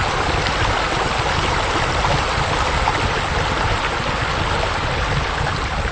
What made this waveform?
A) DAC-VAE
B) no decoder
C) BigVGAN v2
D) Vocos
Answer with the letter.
B